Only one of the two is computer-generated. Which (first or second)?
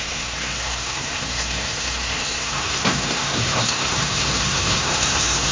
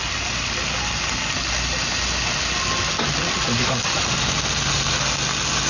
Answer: first